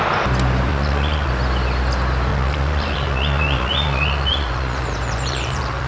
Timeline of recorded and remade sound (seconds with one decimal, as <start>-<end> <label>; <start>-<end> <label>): 0.0-0.7 recorded; 0.7-1.3 remade; 1.3-2.3 recorded; 2.3-5.9 remade